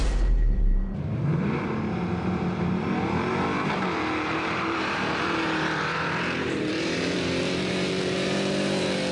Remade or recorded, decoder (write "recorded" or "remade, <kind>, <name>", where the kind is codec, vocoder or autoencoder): remade, vocoder, BigVGAN v2